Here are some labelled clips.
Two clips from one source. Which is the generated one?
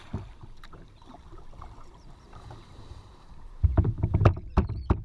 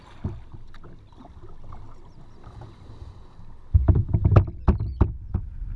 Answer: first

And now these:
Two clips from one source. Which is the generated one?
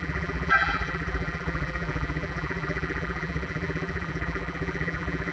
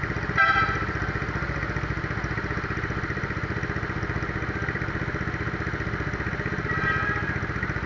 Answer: first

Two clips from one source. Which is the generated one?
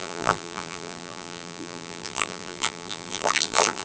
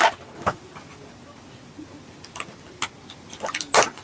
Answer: first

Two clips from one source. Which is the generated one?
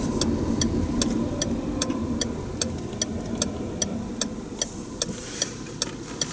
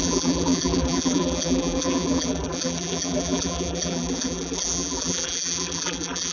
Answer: second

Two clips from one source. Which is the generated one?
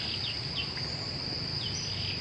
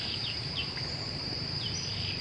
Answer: second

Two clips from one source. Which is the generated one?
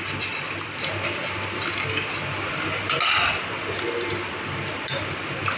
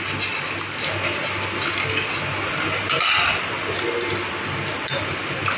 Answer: first